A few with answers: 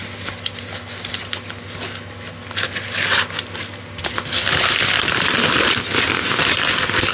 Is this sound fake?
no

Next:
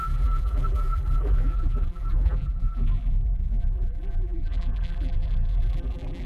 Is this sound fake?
yes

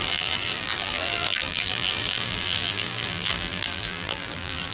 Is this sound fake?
yes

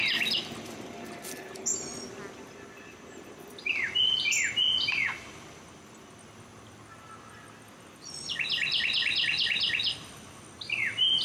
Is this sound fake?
no